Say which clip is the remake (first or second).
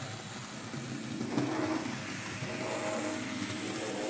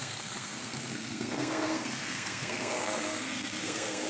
second